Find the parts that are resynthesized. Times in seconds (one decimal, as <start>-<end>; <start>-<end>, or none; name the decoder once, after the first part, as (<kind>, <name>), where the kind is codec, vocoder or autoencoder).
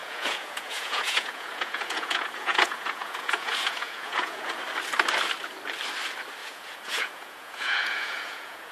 0.0-4.6 (vocoder, Vocos); 6.4-8.7